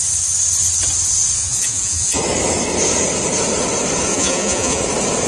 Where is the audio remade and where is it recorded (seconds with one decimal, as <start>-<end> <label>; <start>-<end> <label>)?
0.0-1.4 recorded; 1.4-2.2 remade; 2.2-4.1 recorded; 4.1-4.8 remade; 4.8-5.3 recorded

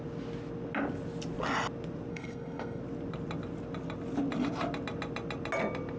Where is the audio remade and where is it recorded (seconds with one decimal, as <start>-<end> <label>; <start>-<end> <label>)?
0.0-2.1 recorded; 2.1-2.8 remade; 2.8-6.0 recorded

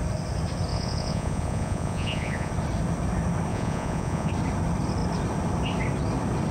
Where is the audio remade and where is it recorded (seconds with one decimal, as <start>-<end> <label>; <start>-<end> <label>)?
0.0-0.7 recorded; 0.7-2.5 remade; 2.5-3.5 recorded; 3.5-4.3 remade; 4.3-6.5 recorded

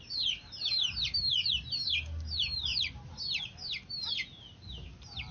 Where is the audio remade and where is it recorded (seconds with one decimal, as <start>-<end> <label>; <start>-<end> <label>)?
0.0-5.3 recorded

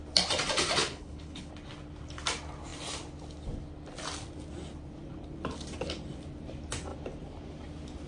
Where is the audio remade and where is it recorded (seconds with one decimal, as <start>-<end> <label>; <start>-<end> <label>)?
0.0-0.8 recorded; 0.8-1.5 remade; 1.5-8.1 recorded